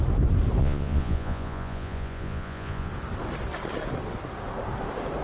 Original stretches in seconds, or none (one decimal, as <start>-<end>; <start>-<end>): 0.0-0.6; 2.9-5.2